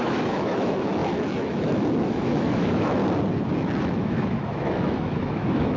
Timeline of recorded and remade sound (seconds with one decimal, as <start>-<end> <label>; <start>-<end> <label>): 0.0-3.0 remade; 3.0-3.8 recorded; 3.8-5.8 remade